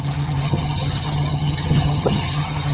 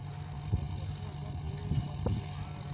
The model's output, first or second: first